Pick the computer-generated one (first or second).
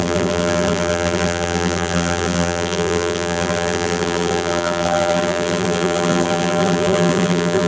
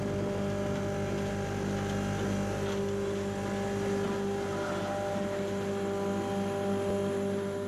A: first